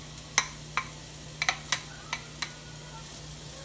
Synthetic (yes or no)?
no